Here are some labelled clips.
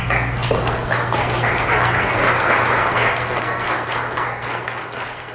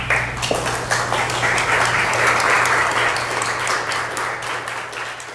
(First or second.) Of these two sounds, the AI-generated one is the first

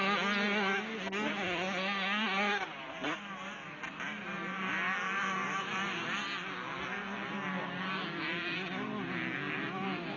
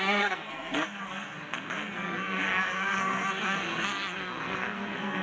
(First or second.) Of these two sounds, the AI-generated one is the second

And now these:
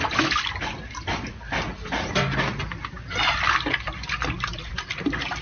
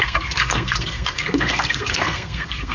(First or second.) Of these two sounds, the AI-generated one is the second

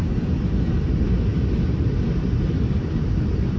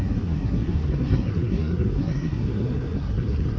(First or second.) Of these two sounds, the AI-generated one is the second